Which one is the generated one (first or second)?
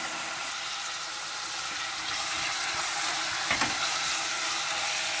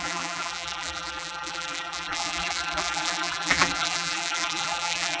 second